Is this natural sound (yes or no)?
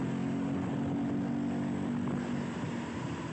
yes